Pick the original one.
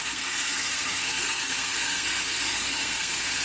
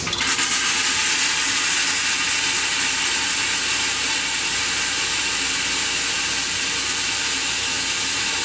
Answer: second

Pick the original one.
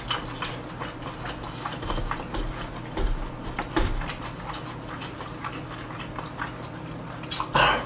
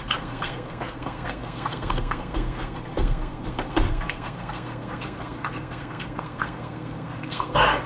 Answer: first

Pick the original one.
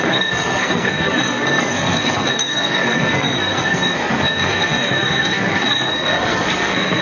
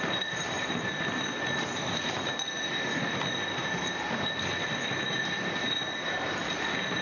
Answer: second